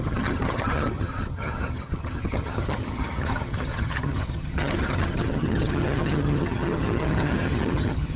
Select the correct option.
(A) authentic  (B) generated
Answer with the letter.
B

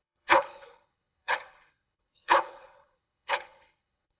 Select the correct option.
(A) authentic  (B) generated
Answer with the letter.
B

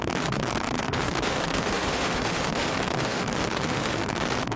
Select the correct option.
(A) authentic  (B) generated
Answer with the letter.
B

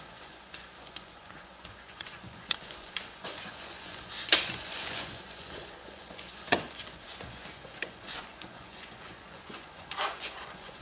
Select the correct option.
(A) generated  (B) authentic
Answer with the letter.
A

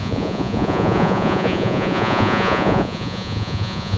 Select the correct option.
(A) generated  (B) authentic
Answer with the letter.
A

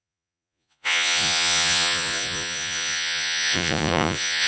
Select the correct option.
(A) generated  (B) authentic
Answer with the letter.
A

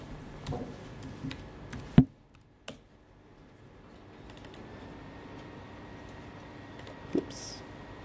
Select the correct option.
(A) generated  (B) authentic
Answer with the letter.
B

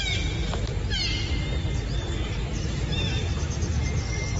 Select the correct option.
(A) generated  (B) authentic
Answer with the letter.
B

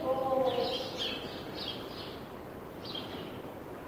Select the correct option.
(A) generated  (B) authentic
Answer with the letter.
B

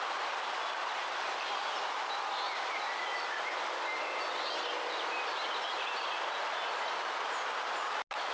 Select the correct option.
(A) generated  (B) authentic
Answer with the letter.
B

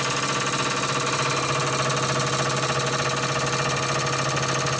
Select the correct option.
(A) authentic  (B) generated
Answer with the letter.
A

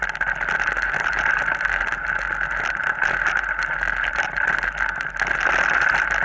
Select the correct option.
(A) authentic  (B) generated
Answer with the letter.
A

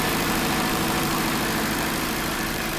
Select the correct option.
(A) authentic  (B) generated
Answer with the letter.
B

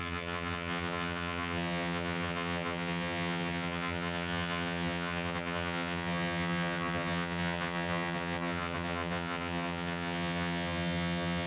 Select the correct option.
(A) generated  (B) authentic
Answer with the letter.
A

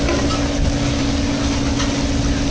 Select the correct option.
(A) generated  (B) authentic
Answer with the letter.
B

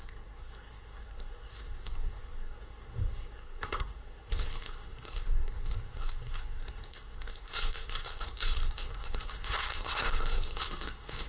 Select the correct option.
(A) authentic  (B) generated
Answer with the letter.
B